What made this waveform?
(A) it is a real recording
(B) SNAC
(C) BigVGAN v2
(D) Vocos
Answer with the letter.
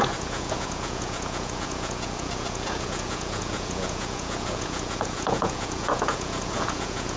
D